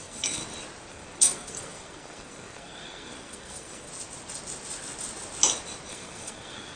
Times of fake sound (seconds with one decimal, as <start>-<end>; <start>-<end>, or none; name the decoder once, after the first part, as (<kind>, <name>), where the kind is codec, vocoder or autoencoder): 0.0-0.4 (codec, SNAC); 0.9-3.9; 5.9-6.8